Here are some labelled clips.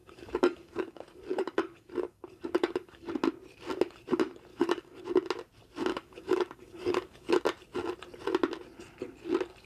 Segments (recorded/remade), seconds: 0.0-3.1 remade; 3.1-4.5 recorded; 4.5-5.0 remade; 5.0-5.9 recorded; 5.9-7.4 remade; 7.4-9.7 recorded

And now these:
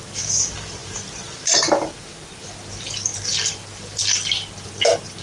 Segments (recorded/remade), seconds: 0.0-5.2 recorded

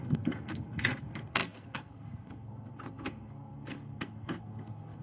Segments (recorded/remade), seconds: 0.0-5.0 remade

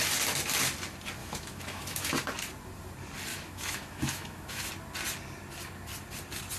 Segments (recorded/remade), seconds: 0.0-1.2 recorded; 1.2-2.1 remade; 2.1-3.3 recorded; 3.3-4.7 remade; 4.7-6.6 recorded

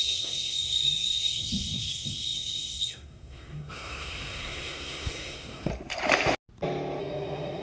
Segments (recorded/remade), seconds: 0.0-5.7 remade; 5.7-7.0 recorded; 7.0-7.6 remade

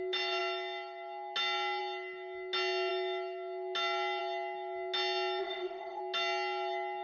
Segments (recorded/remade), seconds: 0.0-5.4 recorded; 5.4-6.0 remade; 6.0-7.0 recorded